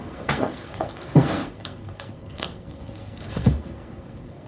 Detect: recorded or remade remade